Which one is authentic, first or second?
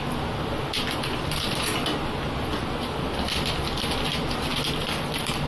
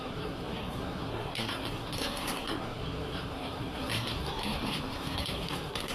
first